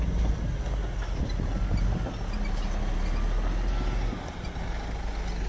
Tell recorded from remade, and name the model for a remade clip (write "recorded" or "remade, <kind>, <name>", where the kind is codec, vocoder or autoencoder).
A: recorded